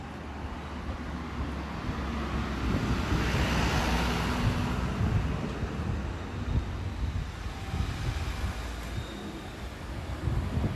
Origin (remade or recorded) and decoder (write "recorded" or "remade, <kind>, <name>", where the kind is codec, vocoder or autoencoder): recorded